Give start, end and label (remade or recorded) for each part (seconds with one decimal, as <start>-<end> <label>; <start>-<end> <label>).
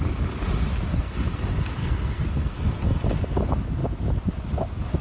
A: 0.0-0.9 recorded; 0.9-1.4 remade; 1.4-1.8 recorded; 1.8-3.0 remade; 3.0-5.0 recorded